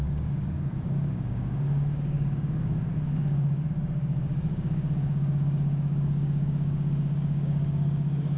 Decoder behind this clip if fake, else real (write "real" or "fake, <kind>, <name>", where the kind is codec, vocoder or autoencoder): fake, codec, DAC